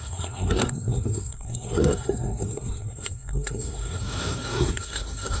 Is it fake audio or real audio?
fake